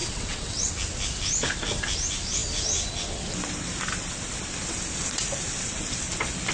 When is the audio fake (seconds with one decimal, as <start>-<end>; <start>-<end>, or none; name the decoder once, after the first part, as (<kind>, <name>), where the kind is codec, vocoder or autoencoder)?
0.0-0.7 (vocoder, WaveNeXt)